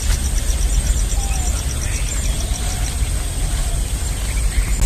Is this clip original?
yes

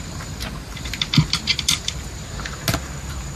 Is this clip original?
yes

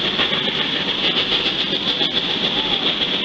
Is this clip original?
yes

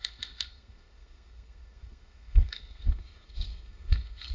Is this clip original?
no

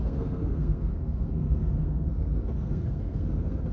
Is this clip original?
no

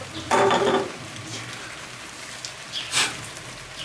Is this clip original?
yes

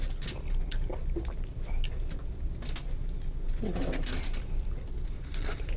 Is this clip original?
yes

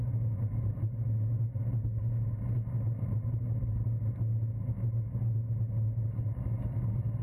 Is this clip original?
yes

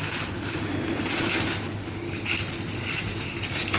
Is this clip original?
yes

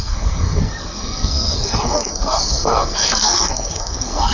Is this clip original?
no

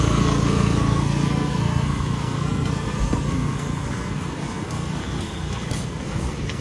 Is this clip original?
no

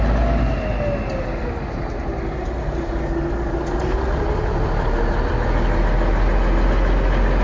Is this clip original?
yes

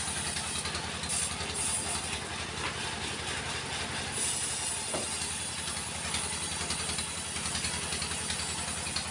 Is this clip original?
yes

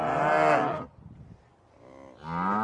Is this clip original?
yes